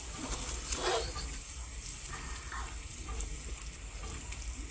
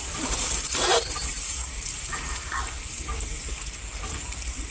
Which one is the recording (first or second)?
first